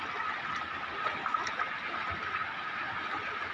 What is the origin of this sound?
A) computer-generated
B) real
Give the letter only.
B